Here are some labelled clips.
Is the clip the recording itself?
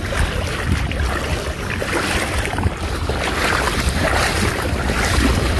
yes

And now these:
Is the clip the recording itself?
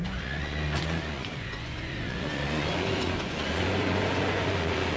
no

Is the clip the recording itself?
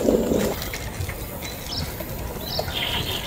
yes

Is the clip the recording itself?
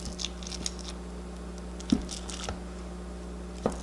yes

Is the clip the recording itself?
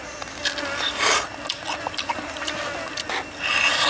yes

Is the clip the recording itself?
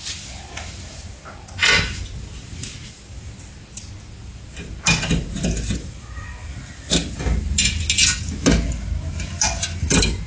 yes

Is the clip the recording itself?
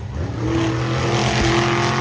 yes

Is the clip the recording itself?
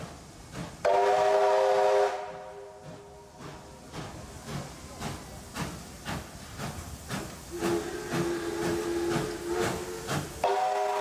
yes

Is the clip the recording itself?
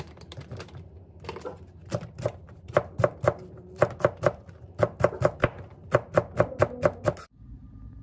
yes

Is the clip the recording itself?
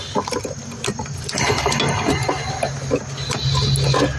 yes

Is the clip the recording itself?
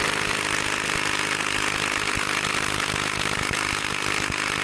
yes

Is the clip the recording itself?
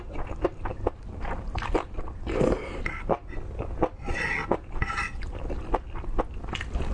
yes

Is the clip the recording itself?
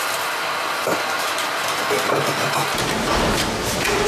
yes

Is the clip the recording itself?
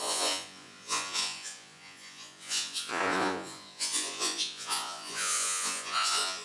no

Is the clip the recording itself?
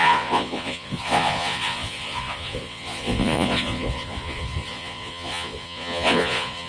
no